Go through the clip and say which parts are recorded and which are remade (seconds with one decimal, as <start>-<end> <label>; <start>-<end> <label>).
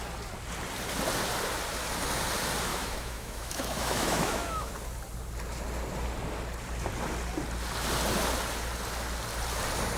0.0-2.7 recorded; 2.7-4.7 remade; 4.7-10.0 recorded